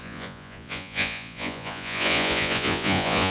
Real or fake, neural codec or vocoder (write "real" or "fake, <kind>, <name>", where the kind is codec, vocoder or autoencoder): fake, vocoder, Vocos